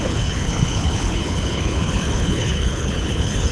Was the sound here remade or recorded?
remade